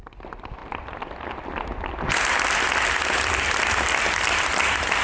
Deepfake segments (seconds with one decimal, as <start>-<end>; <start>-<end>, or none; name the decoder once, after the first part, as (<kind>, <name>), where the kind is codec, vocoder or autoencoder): none